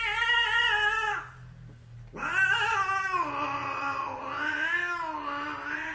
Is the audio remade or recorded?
recorded